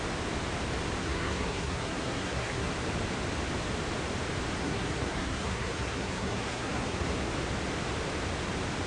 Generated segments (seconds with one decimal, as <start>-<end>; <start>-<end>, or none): 1.0-2.7; 4.6-7.3